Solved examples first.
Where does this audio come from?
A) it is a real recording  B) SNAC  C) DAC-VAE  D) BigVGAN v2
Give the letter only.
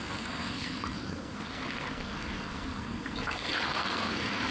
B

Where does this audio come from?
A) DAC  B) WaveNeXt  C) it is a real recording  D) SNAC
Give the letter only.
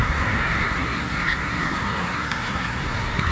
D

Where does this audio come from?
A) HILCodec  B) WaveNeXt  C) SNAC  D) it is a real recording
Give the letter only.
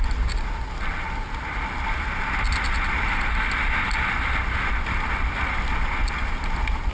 D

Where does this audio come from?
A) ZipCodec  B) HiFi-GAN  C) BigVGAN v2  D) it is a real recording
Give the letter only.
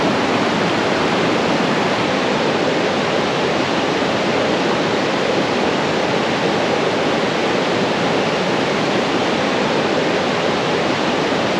C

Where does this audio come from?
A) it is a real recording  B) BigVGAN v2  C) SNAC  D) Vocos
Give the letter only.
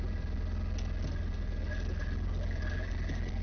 A